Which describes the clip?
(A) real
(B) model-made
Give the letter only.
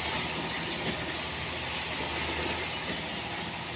A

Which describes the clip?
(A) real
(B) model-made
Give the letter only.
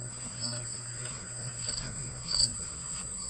B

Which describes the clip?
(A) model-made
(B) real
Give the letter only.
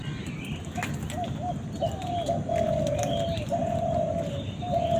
B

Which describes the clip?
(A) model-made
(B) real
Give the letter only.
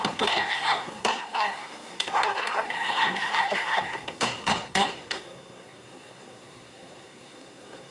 A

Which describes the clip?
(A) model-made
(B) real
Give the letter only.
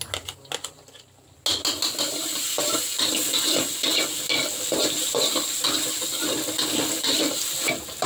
B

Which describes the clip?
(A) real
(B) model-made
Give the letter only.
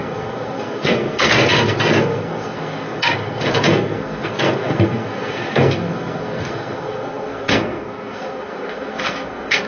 B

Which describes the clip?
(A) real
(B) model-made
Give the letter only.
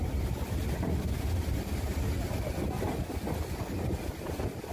A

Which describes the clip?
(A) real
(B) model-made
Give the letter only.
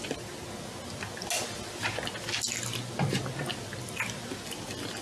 A